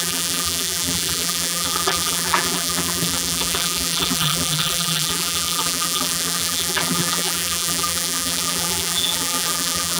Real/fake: fake